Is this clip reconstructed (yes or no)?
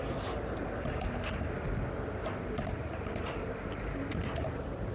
no